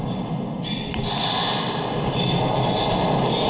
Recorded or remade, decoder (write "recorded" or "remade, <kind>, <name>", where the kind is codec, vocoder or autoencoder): recorded